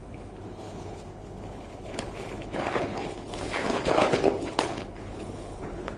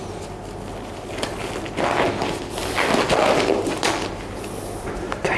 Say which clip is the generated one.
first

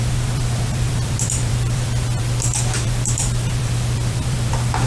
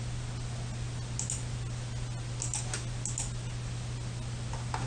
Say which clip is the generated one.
first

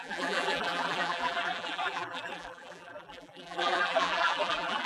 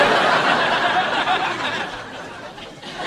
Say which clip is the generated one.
first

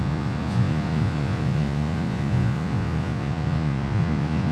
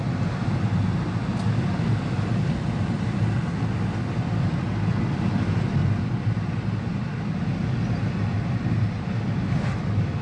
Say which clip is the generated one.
first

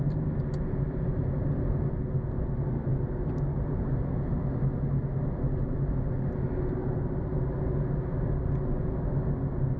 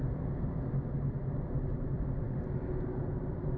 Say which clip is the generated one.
second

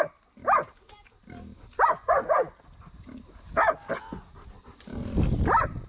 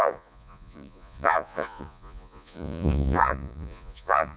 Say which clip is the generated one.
second